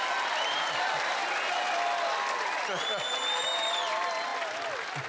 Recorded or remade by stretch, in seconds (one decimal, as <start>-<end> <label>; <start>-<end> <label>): 0.0-1.2 remade; 1.2-2.8 recorded; 2.8-4.3 remade; 4.3-5.1 recorded